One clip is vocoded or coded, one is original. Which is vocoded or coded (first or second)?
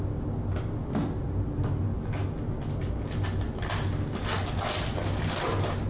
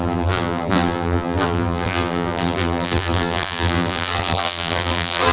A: second